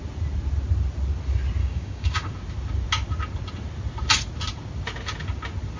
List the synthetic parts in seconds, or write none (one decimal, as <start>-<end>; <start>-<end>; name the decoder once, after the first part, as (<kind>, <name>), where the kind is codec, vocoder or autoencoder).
1.6-2.3 (codec, DAC)